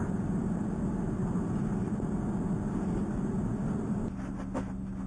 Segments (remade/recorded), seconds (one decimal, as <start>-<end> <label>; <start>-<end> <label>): 0.0-5.1 recorded